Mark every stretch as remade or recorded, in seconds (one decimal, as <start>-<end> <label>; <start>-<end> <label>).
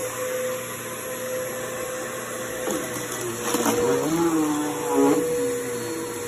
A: 0.0-6.3 recorded